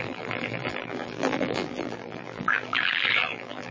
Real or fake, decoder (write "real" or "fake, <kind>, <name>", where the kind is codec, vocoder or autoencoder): fake, vocoder, BigVGAN v2